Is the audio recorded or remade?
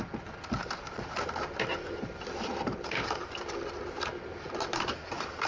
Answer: remade